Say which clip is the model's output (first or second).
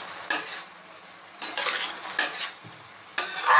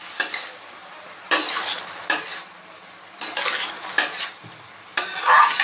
second